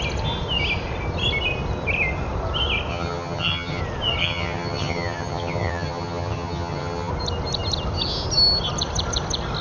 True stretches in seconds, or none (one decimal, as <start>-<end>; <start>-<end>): 0.0-2.9; 3.8-4.2; 7.1-9.6

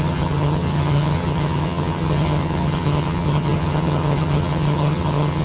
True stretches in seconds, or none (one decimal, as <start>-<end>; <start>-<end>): none